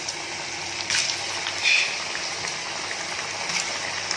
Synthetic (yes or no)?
no